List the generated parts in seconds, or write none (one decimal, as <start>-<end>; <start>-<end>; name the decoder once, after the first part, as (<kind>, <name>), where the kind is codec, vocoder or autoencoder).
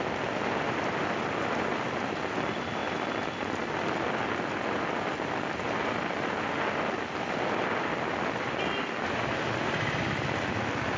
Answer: none